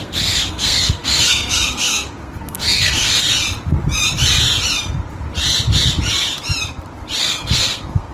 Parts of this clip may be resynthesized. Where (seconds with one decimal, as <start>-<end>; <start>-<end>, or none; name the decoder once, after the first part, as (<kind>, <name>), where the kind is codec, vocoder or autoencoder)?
0.0-3.1 (codec, SNAC); 7.2-8.1